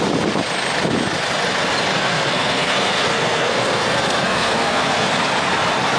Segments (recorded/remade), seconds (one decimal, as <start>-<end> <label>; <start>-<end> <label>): 0.0-2.0 recorded; 2.0-5.1 remade; 5.1-6.0 recorded